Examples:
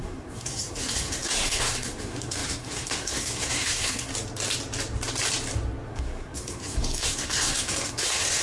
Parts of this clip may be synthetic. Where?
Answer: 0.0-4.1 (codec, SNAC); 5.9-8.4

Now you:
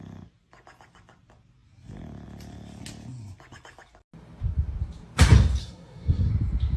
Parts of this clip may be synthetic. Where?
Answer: 5.6-6.3 (codec, SNAC)

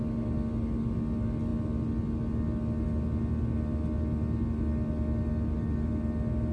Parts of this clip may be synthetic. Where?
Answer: none